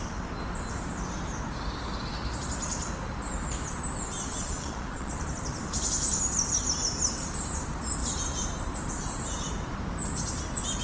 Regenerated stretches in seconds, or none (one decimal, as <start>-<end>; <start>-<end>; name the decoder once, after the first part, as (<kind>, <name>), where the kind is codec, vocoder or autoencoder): 4.3-5.1 (vocoder, Vocos)